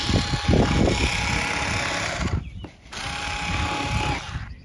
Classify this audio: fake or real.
real